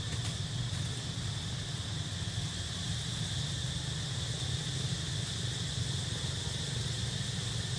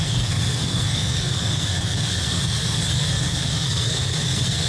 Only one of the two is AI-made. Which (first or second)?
second